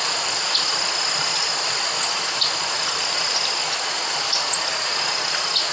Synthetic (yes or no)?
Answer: no